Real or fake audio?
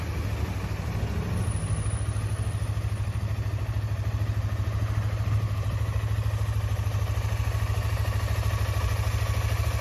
real